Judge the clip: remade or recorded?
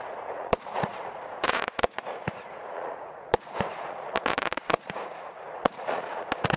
remade